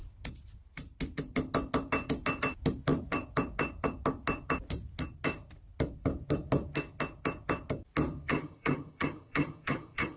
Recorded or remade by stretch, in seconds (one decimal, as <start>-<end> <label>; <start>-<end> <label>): 0.0-8.3 recorded; 8.3-10.2 remade